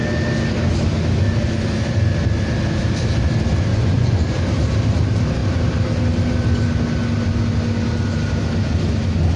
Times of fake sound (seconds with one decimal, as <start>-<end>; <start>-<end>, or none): 3.7-4.3